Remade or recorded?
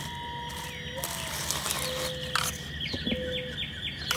recorded